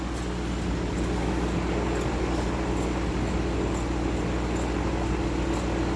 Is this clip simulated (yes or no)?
no